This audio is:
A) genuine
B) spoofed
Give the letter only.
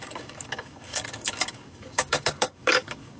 B